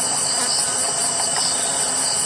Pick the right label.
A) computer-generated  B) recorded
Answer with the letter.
B